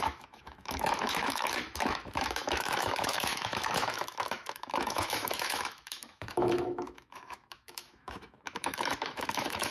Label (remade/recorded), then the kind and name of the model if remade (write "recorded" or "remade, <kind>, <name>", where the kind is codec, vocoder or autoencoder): remade, autoencoder, DAC-VAE